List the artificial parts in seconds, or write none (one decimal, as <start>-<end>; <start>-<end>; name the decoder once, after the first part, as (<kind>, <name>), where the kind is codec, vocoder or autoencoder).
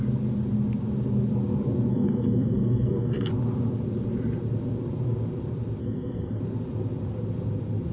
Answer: 1.9-3.3 (codec, SNAC); 5.8-6.4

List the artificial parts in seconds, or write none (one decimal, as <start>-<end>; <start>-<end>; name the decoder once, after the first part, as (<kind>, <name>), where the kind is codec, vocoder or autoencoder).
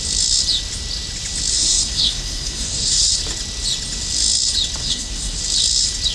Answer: 1.5-3.1 (codec, SNAC); 4.8-5.4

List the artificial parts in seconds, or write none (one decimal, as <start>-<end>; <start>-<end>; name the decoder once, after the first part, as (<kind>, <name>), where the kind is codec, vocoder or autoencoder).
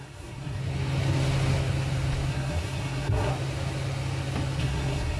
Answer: 0.0-0.6 (codec, SNAC); 2.3-3.3; 4.6-5.2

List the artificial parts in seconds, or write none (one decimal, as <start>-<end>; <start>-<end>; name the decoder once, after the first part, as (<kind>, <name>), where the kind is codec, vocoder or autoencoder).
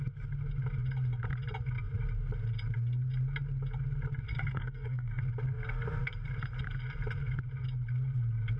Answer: 4.3-5.2 (codec, SNAC)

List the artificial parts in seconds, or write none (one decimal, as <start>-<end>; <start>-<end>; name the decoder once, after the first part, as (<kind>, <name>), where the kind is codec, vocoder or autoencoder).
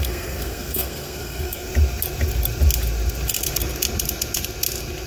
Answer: 0.0-1.7 (codec, SNAC)